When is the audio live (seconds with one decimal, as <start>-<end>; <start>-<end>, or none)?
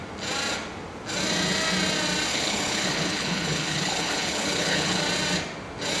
0.0-2.3; 5.0-6.0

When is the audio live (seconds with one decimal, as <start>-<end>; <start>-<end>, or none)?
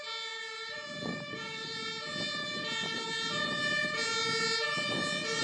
0.0-5.4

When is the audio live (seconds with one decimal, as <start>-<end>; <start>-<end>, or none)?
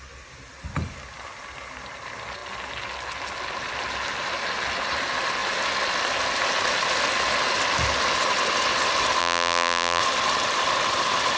0.0-9.2; 10.0-11.4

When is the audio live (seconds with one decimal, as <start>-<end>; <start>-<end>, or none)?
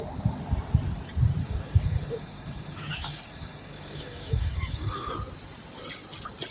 0.0-1.4; 5.1-6.5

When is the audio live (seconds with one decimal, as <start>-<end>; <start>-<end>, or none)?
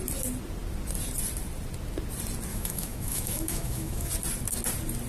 0.0-2.5; 4.1-5.1